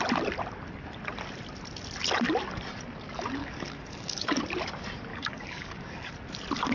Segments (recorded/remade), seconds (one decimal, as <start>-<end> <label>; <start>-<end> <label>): 0.0-3.4 recorded; 3.4-4.4 remade; 4.4-5.1 recorded; 5.1-6.1 remade; 6.1-6.7 recorded